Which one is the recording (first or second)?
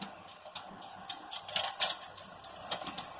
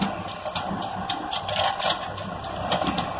first